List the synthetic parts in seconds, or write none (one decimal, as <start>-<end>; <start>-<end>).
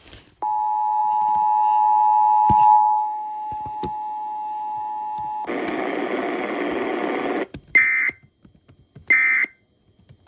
none